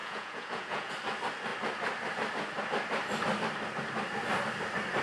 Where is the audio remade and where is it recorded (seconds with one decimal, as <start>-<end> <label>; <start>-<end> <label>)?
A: 0.0-0.9 remade; 0.9-5.0 recorded